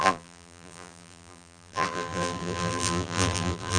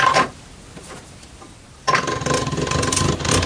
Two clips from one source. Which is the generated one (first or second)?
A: first